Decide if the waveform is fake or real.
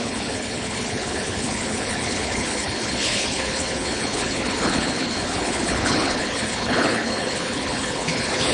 fake